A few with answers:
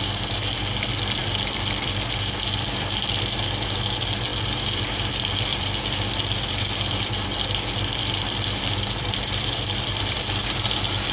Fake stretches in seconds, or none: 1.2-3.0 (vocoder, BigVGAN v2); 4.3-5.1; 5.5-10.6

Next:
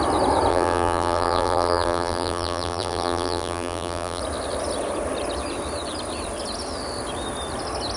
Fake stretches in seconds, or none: 0.5-4.2 (vocoder, BigVGAN v2)